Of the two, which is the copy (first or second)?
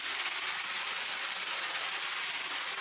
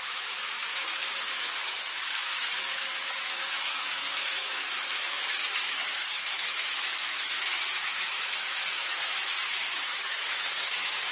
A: second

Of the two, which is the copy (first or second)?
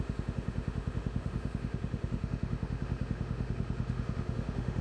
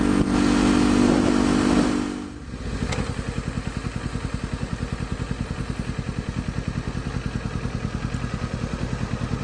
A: first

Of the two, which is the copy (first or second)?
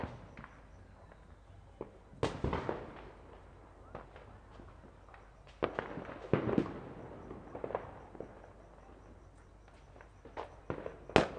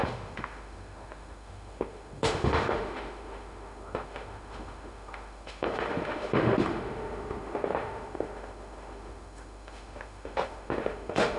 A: second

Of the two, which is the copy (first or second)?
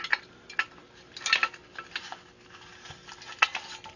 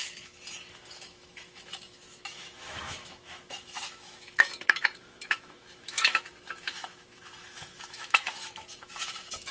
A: second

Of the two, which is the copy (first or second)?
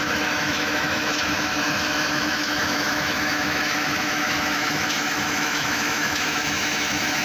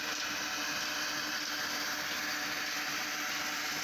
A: first